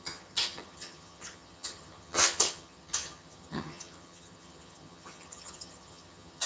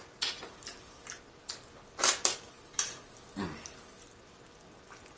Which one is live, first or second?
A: second